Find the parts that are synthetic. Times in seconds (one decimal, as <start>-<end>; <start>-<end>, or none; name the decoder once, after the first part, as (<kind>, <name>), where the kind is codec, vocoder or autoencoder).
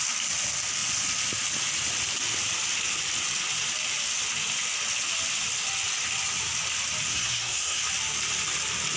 7.1-7.8 (codec, SNAC)